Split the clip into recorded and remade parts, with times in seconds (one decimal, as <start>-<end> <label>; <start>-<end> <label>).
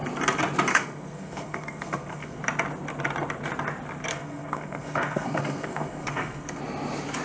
0.0-0.7 recorded; 0.7-2.4 remade; 2.4-4.1 recorded; 4.1-6.6 remade; 6.6-7.2 recorded